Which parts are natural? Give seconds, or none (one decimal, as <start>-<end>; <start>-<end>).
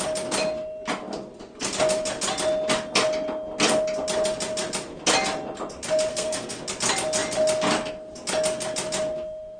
0.0-6.1; 6.6-9.6